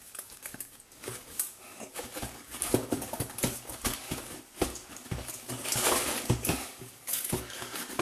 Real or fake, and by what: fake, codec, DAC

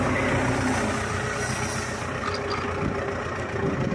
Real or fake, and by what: real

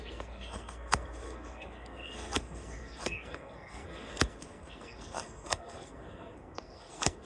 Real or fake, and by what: fake, codec, SNAC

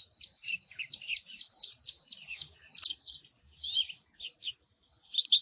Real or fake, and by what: real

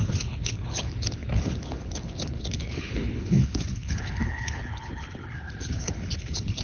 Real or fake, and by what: fake, codec, HILCodec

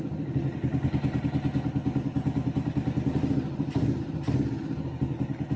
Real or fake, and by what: real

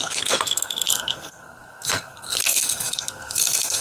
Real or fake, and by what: fake, codec, SNAC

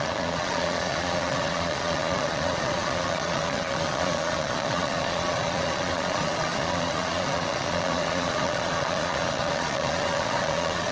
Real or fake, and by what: fake, vocoder, Vocos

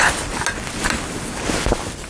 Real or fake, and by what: real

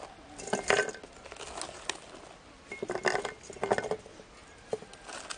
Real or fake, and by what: real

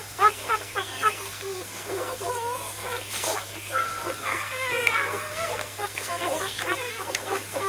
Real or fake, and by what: fake, codec, SNAC